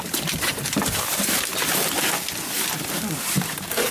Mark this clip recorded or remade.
recorded